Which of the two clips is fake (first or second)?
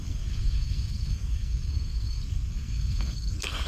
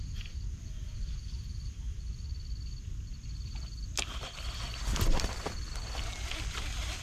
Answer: first